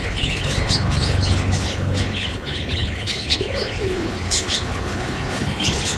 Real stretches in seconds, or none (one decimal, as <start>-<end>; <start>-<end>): none